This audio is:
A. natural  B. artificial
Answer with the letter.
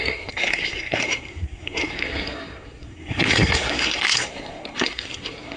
B